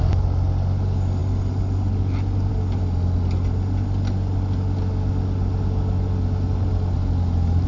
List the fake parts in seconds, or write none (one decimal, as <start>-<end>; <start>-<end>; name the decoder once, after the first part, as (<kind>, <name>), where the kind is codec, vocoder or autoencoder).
none